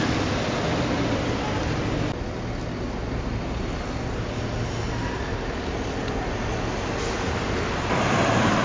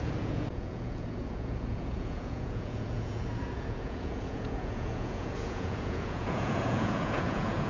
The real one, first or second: first